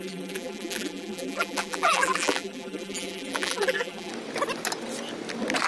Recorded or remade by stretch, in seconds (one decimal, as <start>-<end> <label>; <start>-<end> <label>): 0.0-4.1 remade; 4.1-5.7 recorded